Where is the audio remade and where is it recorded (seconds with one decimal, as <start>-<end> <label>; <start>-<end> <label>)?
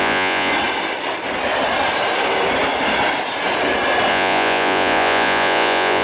0.0-0.5 remade; 0.5-4.1 recorded; 4.1-6.0 remade